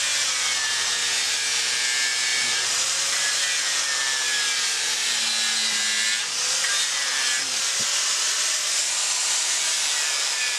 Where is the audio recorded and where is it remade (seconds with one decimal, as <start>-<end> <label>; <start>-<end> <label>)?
0.0-10.6 recorded